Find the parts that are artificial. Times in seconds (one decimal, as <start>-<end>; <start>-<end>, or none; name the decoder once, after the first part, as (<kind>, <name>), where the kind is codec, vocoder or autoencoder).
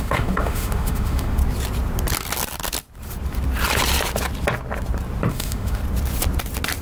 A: 0.0-1.4 (autoencoder, DAC-VAE); 5.3-5.8